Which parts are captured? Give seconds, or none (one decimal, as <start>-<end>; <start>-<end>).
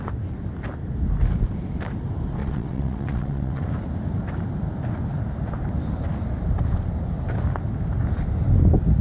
0.0-2.4; 3.7-9.0